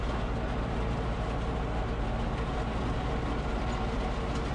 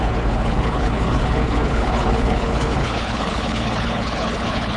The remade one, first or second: second